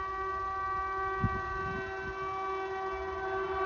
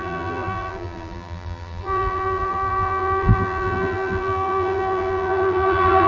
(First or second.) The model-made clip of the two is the second